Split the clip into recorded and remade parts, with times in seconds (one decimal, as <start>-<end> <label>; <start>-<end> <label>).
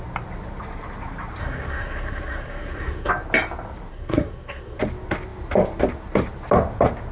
0.0-1.4 recorded; 1.4-3.1 remade; 3.1-3.9 recorded; 3.9-4.8 remade; 4.8-7.1 recorded